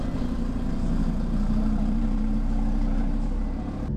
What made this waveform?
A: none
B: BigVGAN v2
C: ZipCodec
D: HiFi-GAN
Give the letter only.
B